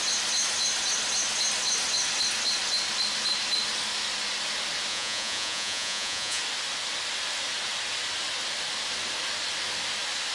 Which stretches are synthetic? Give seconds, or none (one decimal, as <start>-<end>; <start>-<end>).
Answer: 4.9-6.4